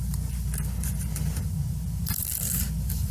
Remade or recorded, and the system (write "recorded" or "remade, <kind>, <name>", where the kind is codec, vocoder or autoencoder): recorded